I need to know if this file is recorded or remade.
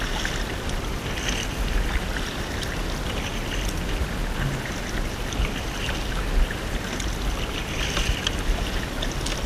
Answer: recorded